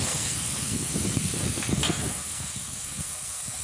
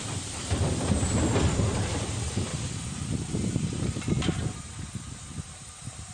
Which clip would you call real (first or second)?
second